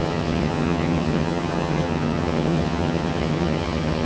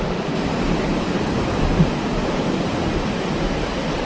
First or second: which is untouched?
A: second